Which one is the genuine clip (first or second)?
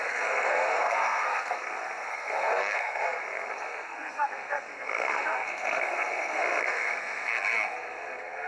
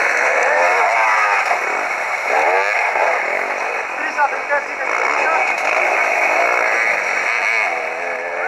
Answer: second